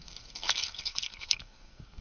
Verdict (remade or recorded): remade